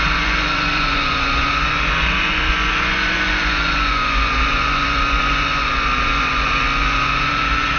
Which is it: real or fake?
fake